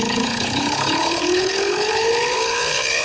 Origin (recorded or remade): remade